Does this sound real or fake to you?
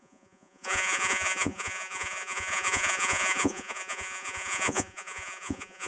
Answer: fake